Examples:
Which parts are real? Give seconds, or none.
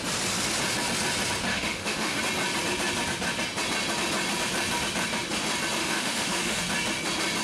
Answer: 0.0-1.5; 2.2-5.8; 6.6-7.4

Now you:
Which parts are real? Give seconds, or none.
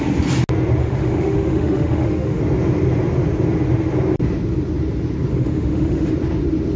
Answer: 0.0-0.8; 2.4-5.3; 6.1-6.8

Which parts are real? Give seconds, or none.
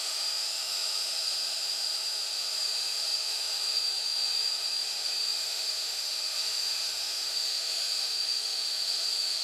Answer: none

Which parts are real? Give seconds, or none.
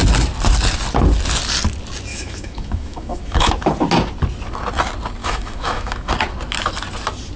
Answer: 0.0-2.1; 3.5-5.2; 6.1-7.4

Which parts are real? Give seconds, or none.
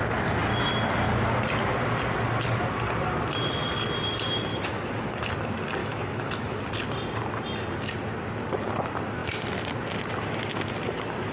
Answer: 0.0-4.5; 5.3-5.8; 6.6-11.3